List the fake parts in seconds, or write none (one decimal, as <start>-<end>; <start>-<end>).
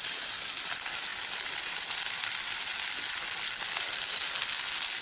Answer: none